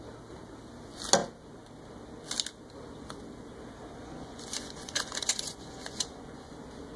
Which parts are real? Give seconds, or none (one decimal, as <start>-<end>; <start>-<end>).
0.0-4.0; 6.5-7.0